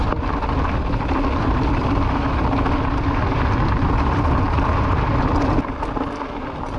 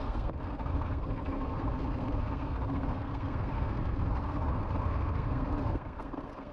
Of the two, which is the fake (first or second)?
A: second